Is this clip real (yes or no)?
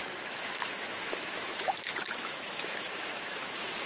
no